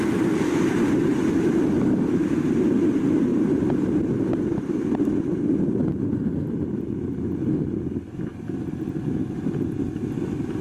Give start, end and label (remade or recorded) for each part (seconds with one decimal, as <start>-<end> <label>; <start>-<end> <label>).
0.0-3.3 recorded; 3.3-4.3 remade; 4.3-5.8 recorded; 5.8-6.3 remade; 6.3-10.6 recorded